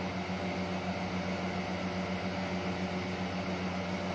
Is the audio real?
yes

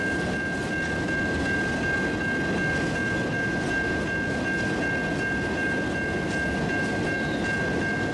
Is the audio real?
yes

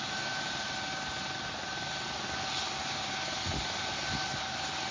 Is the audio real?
yes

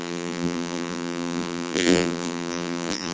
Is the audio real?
no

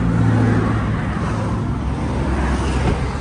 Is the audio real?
yes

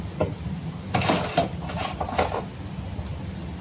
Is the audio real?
yes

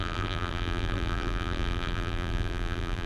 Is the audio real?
no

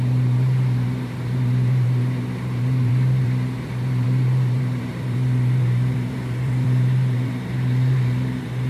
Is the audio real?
no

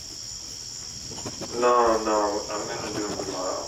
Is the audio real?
yes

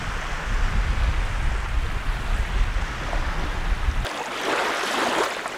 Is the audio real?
yes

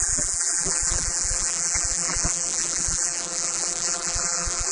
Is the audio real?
no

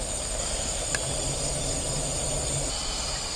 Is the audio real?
yes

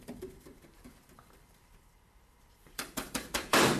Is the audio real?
no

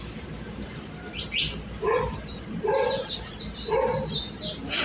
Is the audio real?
no